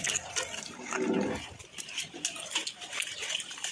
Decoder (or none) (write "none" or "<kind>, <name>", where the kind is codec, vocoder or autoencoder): none